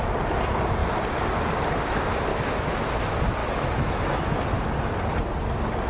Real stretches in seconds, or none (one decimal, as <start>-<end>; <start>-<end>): 0.0-2.3; 2.9-3.4; 4.4-5.9